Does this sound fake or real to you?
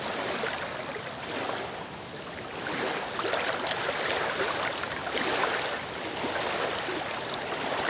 real